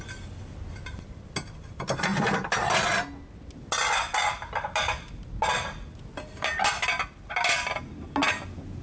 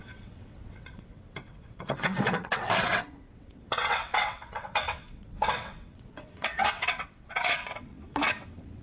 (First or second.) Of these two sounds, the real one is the first